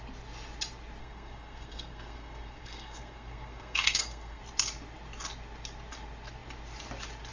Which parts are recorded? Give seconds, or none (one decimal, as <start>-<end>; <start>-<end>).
0.0-1.0; 4.4-7.3